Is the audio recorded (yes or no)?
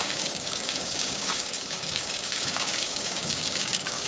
no